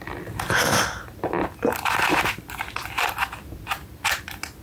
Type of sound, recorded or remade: recorded